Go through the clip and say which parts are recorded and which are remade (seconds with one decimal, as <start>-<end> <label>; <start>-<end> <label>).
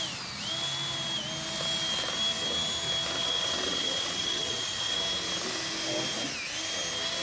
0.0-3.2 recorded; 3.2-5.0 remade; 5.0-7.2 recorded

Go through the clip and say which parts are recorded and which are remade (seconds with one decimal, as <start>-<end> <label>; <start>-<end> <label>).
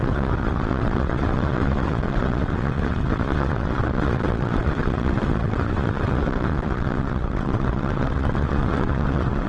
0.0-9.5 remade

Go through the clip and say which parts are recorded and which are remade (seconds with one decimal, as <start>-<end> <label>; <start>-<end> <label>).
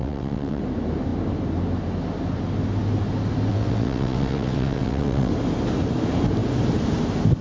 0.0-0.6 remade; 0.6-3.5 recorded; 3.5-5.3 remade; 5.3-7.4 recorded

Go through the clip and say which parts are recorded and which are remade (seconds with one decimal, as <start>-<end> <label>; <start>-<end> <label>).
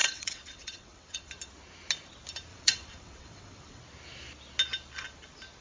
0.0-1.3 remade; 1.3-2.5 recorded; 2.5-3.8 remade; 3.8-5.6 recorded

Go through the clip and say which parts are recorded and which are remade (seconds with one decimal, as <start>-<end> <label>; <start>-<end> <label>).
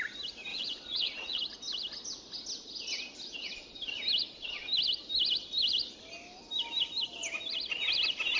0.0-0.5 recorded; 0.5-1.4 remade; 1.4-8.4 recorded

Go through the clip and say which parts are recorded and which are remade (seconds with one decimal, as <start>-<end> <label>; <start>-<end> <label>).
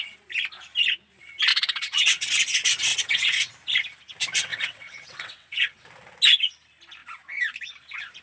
0.0-1.5 recorded; 1.5-2.3 remade; 2.3-2.9 recorded; 2.9-3.5 remade; 3.5-4.5 recorded; 4.5-5.8 remade; 5.8-8.2 recorded